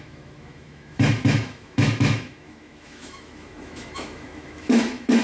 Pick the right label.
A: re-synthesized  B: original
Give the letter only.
A